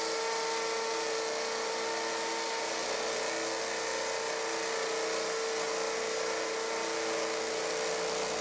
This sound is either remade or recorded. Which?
recorded